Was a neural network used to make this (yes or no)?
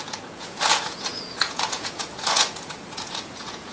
yes